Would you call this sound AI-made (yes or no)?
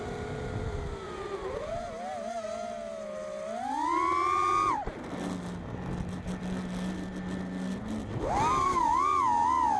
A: no